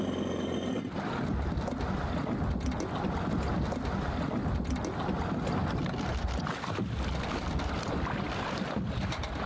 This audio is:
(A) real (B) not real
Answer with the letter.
A